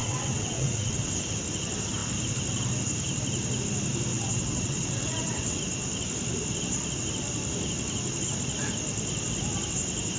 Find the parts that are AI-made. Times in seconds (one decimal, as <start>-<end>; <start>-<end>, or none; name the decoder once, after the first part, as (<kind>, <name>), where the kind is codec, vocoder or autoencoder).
0.0-1.1 (vocoder, WaveNeXt); 4.1-5.6